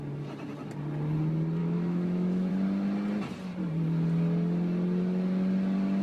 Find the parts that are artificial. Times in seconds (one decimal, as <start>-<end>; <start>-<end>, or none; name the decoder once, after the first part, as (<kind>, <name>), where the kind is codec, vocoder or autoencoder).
1.6-2.5 (autoencoder, DAC-VAE)